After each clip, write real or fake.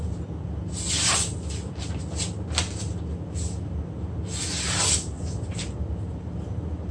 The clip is real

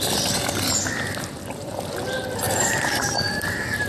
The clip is real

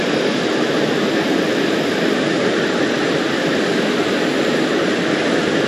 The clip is real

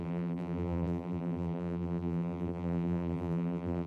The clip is fake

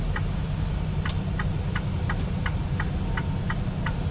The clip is real